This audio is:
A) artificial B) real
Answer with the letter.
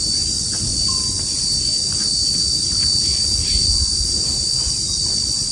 B